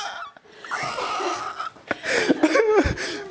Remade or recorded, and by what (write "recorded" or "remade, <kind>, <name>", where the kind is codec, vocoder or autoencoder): recorded